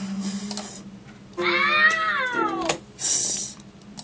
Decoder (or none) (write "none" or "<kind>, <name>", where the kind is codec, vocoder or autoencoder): none